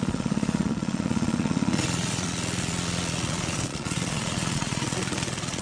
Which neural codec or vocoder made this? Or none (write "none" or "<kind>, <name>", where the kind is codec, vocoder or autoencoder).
vocoder, Vocos